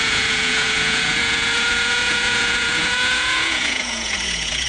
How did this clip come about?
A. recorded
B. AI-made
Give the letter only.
B